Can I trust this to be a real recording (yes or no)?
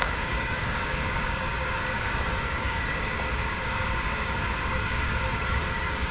no